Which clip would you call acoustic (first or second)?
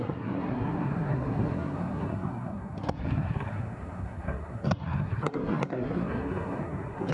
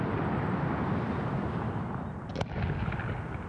second